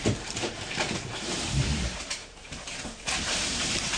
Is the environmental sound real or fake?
fake